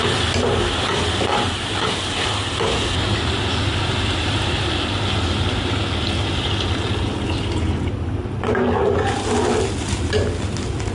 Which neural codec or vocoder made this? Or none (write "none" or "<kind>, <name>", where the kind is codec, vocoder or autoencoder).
none